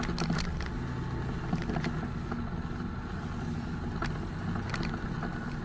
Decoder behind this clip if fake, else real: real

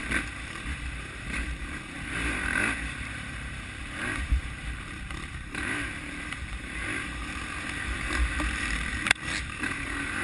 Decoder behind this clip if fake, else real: fake, vocoder, BigVGAN v2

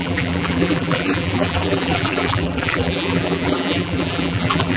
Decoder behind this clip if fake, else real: fake, vocoder, BigVGAN v2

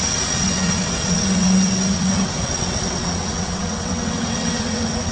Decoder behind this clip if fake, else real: fake, vocoder, WaveNeXt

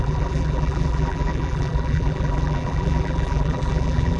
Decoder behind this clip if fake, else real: fake, vocoder, BigVGAN v2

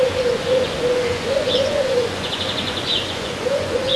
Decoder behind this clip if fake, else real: fake, vocoder, Vocos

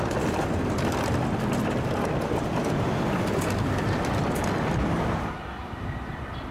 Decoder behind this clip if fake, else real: real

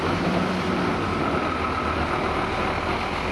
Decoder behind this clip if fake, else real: real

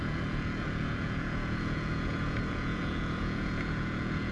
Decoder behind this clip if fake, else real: fake, vocoder, Vocos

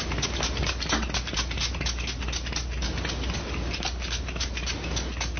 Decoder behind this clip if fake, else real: real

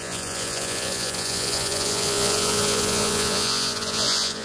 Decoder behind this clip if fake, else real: fake, vocoder, Vocos